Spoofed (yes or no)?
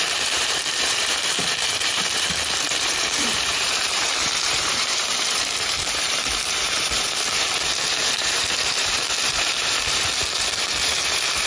yes